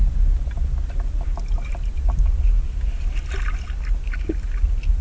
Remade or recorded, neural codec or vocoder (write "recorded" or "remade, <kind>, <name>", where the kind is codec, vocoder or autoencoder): recorded